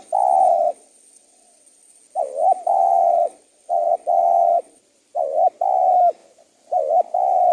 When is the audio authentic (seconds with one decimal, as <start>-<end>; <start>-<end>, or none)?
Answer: 0.0-0.5; 2.0-2.7; 4.8-7.5